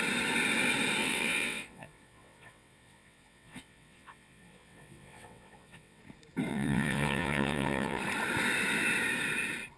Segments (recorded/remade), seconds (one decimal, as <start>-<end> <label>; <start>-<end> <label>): 0.0-1.0 recorded; 1.0-6.0 remade; 6.0-6.5 recorded; 6.5-8.0 remade; 8.0-9.8 recorded

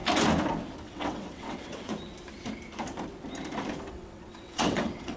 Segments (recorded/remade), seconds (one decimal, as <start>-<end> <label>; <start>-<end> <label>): 0.0-0.8 recorded; 0.8-1.9 remade; 1.9-3.9 recorded; 3.9-5.2 remade

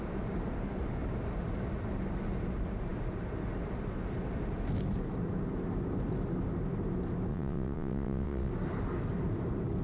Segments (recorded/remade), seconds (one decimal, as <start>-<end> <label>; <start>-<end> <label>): 0.0-7.3 recorded; 7.3-8.5 remade; 8.5-9.8 recorded